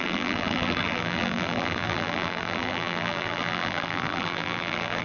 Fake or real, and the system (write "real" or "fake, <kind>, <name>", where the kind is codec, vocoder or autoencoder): fake, vocoder, BigVGAN v2